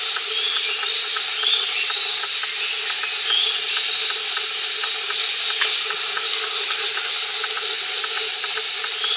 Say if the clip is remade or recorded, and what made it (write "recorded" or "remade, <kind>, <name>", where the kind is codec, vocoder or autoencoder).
recorded